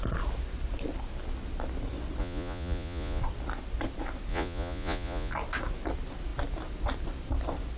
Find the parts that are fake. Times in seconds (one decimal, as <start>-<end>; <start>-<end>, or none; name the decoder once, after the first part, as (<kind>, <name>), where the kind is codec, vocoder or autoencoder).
2.2-3.2 (vocoder, Vocos); 4.3-5.3